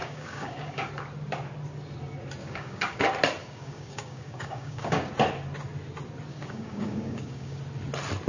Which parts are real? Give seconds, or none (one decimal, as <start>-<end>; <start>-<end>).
0.9-2.4; 3.0-3.4; 5.1-6.3; 7.6-8.3